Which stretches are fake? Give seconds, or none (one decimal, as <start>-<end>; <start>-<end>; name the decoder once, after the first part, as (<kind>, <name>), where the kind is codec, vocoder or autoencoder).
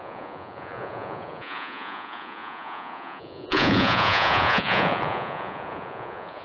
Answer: 0.0-6.4 (vocoder, Vocos)